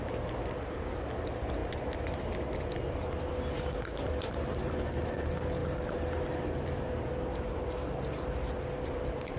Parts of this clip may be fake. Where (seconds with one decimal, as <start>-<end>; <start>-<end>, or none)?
none